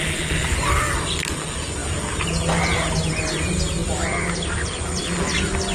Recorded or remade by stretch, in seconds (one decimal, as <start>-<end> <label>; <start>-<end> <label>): 0.0-5.7 recorded